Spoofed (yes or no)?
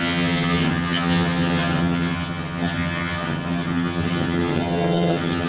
yes